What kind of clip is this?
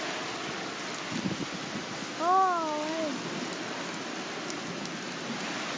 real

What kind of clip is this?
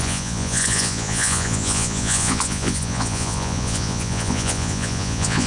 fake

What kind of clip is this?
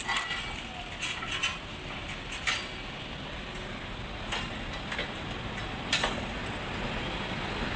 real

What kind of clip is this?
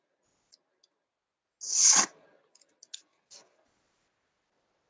real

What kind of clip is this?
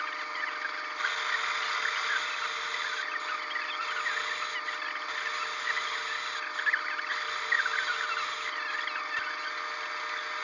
real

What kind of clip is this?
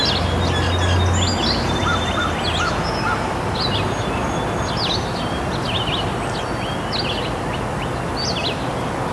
real